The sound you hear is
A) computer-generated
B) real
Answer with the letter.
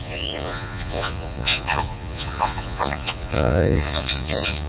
A